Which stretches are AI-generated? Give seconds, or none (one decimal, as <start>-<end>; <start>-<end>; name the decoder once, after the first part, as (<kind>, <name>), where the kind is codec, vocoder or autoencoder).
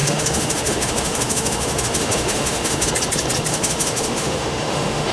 0.0-2.9 (autoencoder, DAC-VAE); 3.5-5.1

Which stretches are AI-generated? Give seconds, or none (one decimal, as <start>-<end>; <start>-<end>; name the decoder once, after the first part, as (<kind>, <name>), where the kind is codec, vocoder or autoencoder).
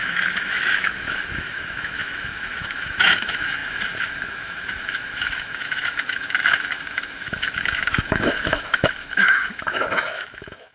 0.0-10.7 (autoencoder, DAC-VAE)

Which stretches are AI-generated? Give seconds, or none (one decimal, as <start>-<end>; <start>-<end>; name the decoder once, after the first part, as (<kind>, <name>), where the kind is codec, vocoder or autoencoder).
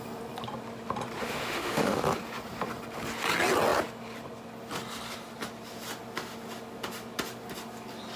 1.2-2.0 (autoencoder, DAC-VAE)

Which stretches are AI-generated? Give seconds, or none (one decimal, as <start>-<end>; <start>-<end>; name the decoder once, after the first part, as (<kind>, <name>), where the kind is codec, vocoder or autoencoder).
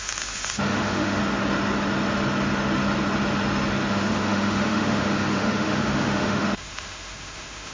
0.0-1.2 (autoencoder, DAC-VAE); 3.9-7.7